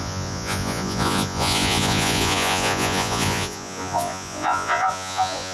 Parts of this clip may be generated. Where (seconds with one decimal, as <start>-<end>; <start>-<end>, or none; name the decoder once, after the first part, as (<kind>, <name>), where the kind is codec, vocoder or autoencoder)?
0.0-5.5 (vocoder, Vocos)